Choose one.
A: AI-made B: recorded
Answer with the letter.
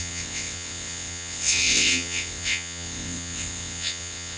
A